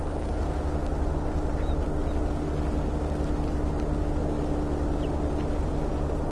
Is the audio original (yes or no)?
yes